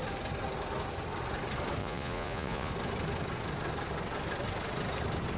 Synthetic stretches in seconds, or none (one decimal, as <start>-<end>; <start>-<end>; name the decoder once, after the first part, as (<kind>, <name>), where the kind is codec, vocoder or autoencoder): 1.8-2.7 (vocoder, Vocos)